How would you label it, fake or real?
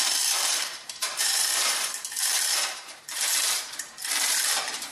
fake